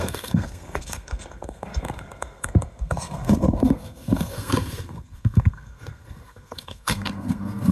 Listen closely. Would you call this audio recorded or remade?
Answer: remade